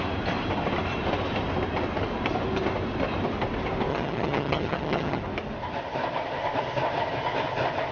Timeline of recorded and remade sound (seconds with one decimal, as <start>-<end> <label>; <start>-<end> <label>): 0.0-3.9 recorded; 3.9-5.2 remade; 5.2-7.9 recorded

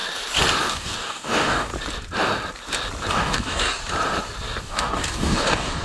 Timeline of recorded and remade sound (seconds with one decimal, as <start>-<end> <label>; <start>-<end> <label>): 0.0-0.7 recorded; 0.7-1.7 remade; 1.7-3.1 recorded; 3.1-3.8 remade; 3.8-4.6 recorded; 4.6-5.8 remade